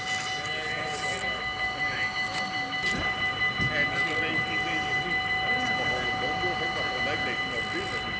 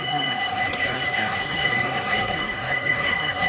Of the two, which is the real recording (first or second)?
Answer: first